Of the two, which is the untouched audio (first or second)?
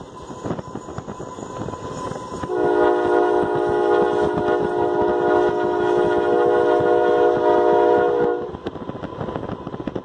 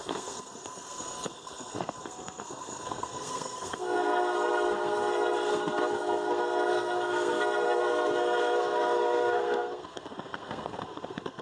first